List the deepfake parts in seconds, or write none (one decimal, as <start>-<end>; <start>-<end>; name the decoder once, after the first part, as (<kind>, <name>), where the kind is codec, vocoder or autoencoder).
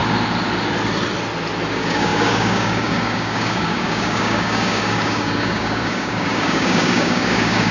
1.7-7.7 (codec, DAC)